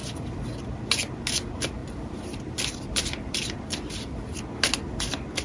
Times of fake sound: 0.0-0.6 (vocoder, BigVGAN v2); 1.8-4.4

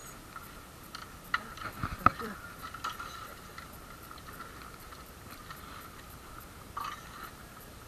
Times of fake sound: 1.5-7.9 (vocoder, BigVGAN v2)

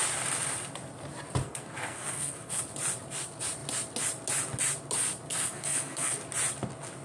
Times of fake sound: 1.4-2.6 (codec, SNAC); 5.3-6.2

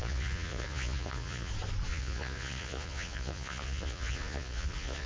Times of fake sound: 0.0-1.5 (vocoder, Vocos); 1.9-5.1